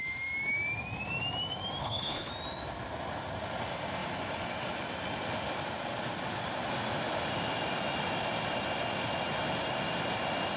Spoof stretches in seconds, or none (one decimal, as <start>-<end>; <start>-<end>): 1.8-2.3